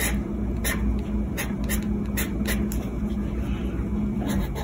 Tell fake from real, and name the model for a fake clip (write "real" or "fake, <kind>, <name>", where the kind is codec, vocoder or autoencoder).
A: real